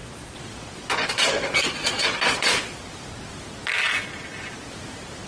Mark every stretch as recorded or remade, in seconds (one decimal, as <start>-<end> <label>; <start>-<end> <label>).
0.0-2.8 remade; 2.8-5.3 recorded